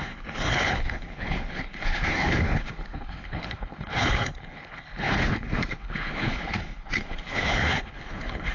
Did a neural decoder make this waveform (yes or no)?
yes